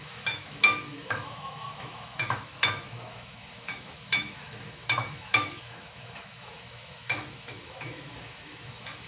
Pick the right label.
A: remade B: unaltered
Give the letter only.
A